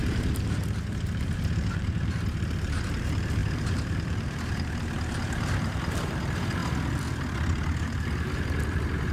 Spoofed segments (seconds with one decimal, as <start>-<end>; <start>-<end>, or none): 0.0-6.6; 7.5-9.1